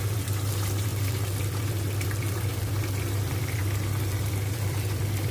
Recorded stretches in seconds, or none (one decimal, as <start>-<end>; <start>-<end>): 3.6-4.1